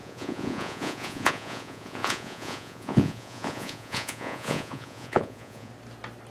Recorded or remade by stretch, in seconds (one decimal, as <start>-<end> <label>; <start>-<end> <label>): 0.0-5.7 remade; 5.7-6.3 recorded